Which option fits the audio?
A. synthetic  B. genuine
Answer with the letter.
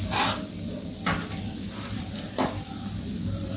B